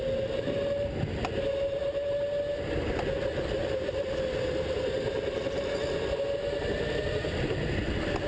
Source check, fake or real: real